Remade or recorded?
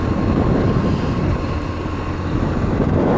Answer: recorded